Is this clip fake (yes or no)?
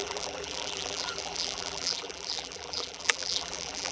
yes